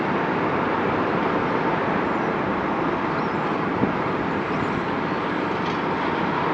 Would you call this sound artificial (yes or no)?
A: no